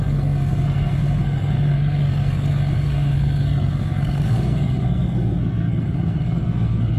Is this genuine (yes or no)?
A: no